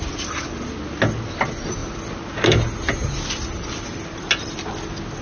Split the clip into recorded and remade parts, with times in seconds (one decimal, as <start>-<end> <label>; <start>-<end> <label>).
0.0-5.2 recorded